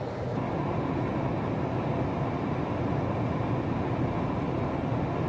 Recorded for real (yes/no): yes